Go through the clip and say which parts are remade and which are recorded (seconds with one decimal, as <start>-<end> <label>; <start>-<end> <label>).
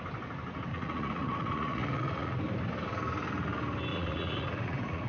0.0-0.7 recorded; 0.7-2.4 remade; 2.4-3.9 recorded; 3.9-5.1 remade